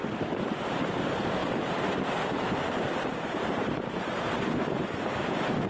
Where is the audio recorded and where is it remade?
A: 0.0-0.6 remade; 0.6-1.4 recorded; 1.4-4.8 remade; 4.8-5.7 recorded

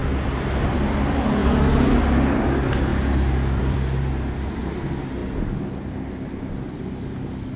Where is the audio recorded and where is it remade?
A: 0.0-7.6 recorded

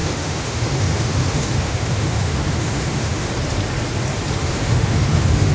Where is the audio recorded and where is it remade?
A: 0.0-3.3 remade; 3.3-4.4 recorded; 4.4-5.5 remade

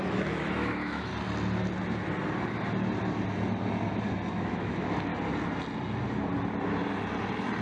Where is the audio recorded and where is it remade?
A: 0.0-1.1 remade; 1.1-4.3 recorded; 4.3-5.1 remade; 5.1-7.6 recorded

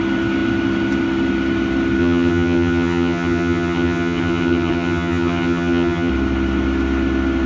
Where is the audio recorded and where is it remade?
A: 0.0-2.0 recorded; 2.0-6.1 remade; 6.1-7.5 recorded

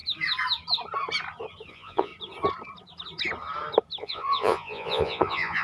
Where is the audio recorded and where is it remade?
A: 0.0-1.7 recorded; 1.7-2.1 remade; 2.1-4.0 recorded; 4.0-5.6 remade

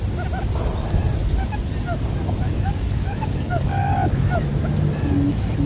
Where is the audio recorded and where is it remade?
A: 0.0-2.4 recorded; 2.4-4.1 remade; 4.1-5.7 recorded